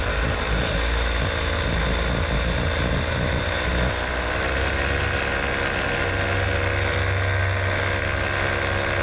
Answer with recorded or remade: recorded